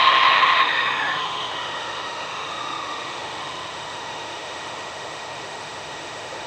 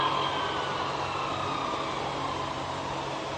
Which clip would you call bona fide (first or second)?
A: second